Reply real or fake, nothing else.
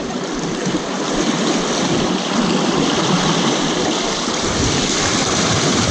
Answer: fake